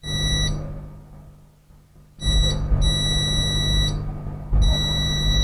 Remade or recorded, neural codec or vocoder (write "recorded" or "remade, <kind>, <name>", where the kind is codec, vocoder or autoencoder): recorded